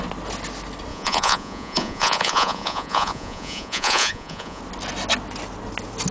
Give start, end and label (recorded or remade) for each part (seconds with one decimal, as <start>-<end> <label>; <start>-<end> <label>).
0.0-0.9 recorded; 0.9-4.6 remade; 4.6-6.1 recorded

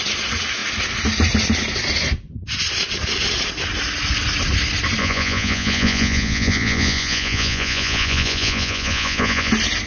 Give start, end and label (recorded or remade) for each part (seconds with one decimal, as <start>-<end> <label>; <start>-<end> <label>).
0.0-5.0 recorded; 5.0-9.5 remade; 9.5-9.9 recorded

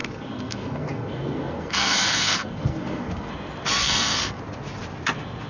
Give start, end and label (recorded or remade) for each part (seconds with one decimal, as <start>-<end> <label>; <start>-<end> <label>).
0.0-3.3 remade; 3.3-3.8 recorded; 3.8-4.4 remade; 4.4-5.5 recorded

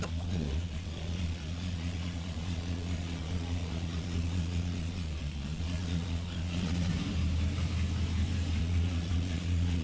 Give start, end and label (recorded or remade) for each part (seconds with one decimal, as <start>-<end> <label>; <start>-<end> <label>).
0.0-6.9 remade; 6.9-8.6 recorded; 8.6-9.8 remade

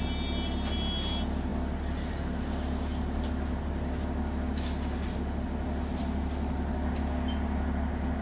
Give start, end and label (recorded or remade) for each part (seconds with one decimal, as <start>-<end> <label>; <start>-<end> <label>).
0.0-8.2 recorded